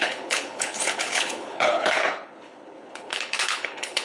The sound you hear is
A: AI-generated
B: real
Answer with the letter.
A